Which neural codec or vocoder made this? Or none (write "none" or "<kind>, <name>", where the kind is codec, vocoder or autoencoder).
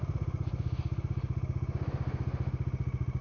none